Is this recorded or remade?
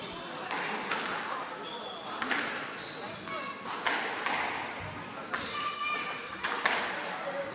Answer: recorded